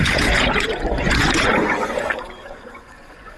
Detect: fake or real fake